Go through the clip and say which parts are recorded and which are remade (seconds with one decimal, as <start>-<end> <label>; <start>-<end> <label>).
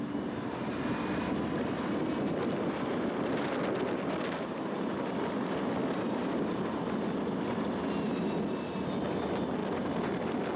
0.0-10.6 recorded